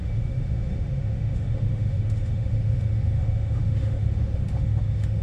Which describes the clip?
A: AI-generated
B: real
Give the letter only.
A